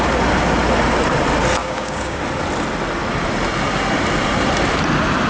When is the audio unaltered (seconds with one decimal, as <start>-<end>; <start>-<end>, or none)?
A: 0.0-1.6; 2.2-5.3